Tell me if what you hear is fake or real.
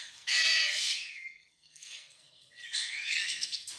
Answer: fake